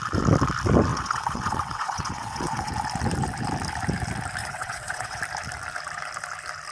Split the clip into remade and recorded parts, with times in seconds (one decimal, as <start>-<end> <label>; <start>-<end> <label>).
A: 0.0-0.9 recorded; 0.9-2.7 remade; 2.7-4.4 recorded; 4.4-5.2 remade; 5.2-6.7 recorded